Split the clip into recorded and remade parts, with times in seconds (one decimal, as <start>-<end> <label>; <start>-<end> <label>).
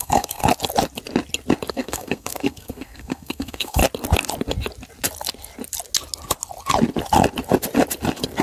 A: 0.0-0.4 remade; 0.4-1.7 recorded; 1.7-3.8 remade; 3.8-8.4 recorded